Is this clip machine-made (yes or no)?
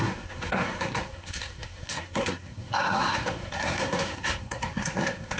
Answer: yes